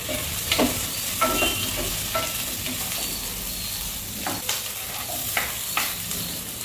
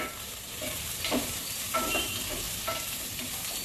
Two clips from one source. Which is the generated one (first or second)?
second